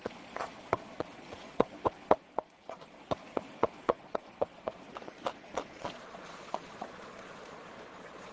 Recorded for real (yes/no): no